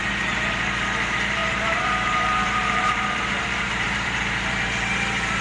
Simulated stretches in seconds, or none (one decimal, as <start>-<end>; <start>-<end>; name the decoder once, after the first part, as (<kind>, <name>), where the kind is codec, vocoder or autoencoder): 1.4-4.6 (vocoder, BigVGAN v2)